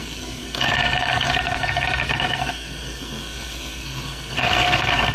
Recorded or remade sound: remade